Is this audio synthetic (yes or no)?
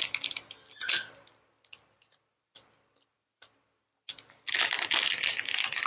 no